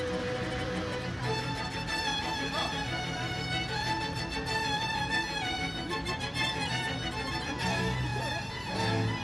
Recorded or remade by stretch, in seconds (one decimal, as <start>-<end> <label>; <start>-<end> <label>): 0.0-9.2 recorded